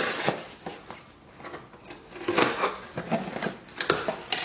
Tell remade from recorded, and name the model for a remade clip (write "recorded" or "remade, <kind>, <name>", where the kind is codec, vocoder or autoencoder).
recorded